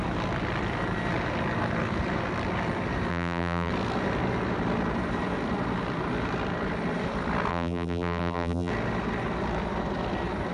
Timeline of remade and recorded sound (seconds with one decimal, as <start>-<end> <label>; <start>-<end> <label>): 0.0-3.1 recorded; 3.1-3.7 remade; 3.7-7.5 recorded; 7.5-8.7 remade; 8.7-10.5 recorded